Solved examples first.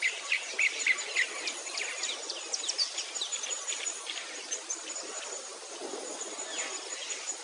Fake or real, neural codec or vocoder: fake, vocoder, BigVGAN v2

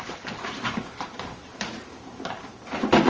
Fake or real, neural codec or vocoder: fake, vocoder, BigVGAN v2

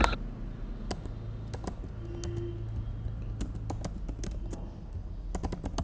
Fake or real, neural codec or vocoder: real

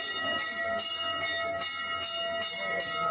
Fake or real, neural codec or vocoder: real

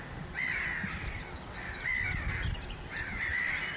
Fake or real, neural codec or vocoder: real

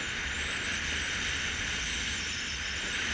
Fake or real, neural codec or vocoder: real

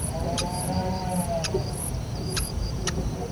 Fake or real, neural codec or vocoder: fake, vocoder, BigVGAN v2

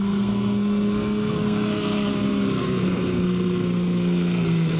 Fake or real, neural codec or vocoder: fake, codec, SNAC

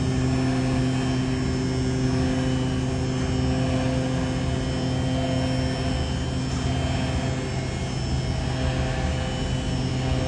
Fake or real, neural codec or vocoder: real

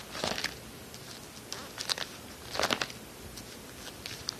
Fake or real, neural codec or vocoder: real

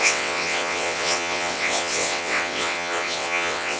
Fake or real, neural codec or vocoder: fake, vocoder, WaveNeXt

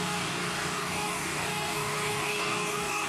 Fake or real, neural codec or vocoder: fake, codec, DAC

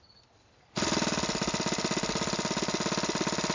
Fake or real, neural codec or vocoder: real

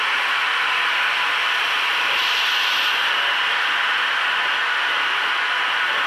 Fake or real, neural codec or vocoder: fake, vocoder, BigVGAN v2